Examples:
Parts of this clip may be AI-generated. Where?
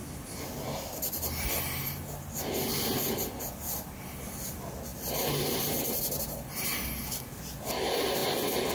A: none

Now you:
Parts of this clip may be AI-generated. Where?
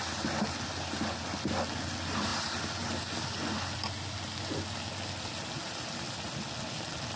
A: none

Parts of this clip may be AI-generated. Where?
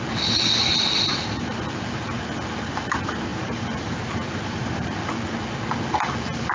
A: 1.1-1.6 (vocoder, BigVGAN v2); 3.3-5.0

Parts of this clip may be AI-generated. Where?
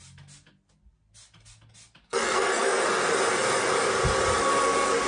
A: 2.0-2.8 (codec, SNAC)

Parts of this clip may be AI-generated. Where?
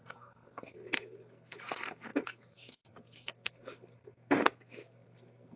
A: 0.0-5.6 (codec, SNAC)